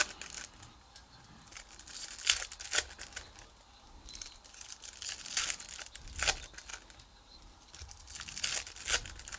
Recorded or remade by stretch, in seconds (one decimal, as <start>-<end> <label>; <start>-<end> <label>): 0.0-9.4 recorded